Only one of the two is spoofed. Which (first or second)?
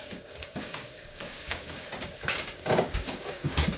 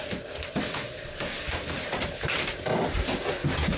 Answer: first